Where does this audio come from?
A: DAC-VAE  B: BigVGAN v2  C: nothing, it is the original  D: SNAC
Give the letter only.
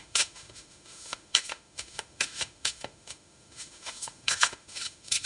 A